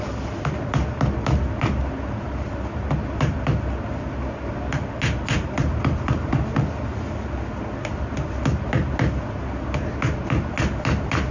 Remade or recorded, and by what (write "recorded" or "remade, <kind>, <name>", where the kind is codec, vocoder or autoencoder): recorded